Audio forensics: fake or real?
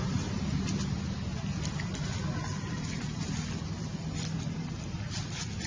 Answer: real